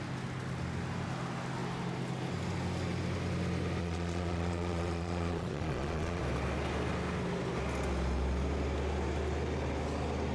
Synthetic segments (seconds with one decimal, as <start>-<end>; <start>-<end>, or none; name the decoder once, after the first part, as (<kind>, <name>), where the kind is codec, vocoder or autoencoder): 3.8-6.2 (vocoder, Vocos)